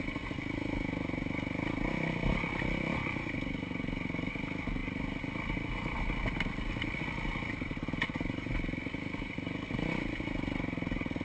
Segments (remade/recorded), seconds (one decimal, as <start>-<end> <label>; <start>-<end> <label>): 0.0-11.2 recorded

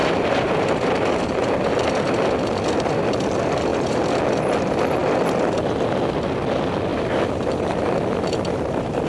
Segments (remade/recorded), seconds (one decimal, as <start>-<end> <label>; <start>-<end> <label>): 0.0-2.0 remade; 2.0-3.7 recorded; 3.7-4.3 remade; 4.3-6.9 recorded; 6.9-7.9 remade; 7.9-9.1 recorded

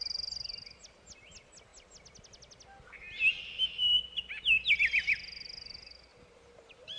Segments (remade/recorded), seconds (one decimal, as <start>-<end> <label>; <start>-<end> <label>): 0.0-6.1 recorded; 6.1-7.0 remade

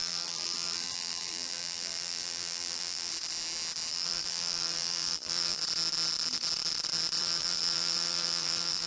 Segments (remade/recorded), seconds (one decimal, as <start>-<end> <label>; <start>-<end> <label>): 0.0-3.1 remade; 3.1-3.9 recorded; 3.9-5.6 remade; 5.6-7.2 recorded; 7.2-8.9 remade

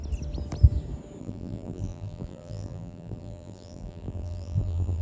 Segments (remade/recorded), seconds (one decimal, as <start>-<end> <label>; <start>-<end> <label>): 0.0-1.2 recorded; 1.2-5.0 remade

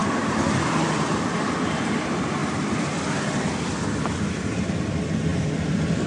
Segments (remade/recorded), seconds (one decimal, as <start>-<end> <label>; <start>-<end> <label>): 0.0-0.5 recorded; 0.5-2.4 remade; 2.4-4.0 recorded; 4.0-6.1 remade